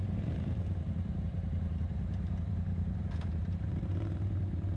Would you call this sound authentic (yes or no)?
no